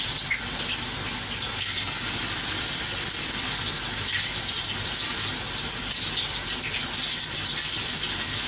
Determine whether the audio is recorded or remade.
recorded